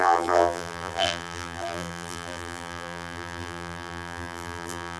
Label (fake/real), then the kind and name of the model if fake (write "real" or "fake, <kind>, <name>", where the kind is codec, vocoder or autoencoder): fake, vocoder, BigVGAN v2